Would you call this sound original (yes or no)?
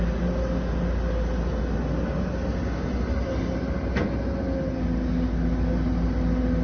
yes